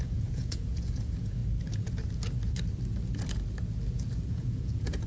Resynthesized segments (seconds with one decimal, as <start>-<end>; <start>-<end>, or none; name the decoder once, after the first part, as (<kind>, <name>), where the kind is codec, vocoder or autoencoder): 0.0-1.4 (vocoder, Vocos); 4.3-5.1